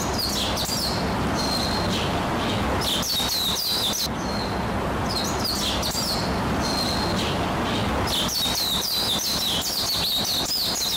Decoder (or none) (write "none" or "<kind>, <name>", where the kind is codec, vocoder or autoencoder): none